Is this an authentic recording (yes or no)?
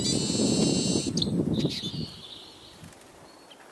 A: yes